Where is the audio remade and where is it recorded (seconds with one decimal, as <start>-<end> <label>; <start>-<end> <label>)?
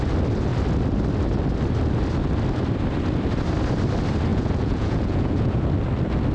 0.0-4.3 recorded; 4.3-5.6 remade; 5.6-6.3 recorded